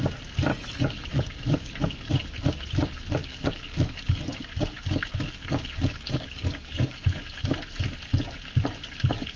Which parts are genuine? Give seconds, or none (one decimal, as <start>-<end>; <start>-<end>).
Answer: 0.0-0.5; 2.1-3.2; 7.4-9.4